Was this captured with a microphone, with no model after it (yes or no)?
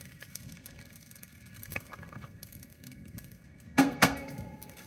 no